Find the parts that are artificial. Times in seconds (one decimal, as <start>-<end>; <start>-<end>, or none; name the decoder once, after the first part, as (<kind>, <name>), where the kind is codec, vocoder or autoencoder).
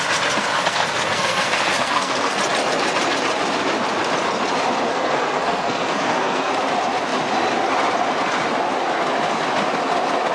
0.4-2.4 (codec, SNAC); 4.9-6.5